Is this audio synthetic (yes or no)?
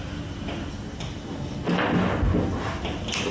no